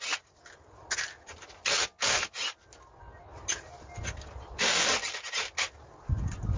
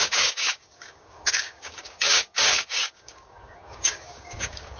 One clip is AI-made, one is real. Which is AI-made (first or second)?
second